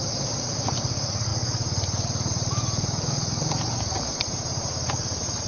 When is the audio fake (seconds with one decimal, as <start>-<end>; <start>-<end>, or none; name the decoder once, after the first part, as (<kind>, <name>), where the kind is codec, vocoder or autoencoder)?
none